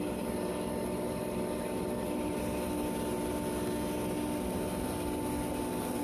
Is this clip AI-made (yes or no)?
no